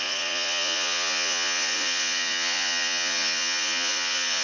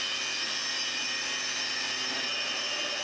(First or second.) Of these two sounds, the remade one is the first